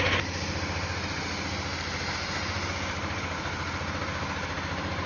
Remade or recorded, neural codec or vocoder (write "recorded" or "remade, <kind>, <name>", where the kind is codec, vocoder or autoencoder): recorded